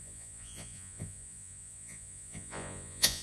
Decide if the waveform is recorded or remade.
remade